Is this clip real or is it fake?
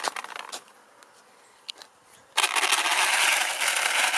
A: real